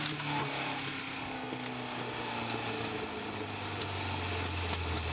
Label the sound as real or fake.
real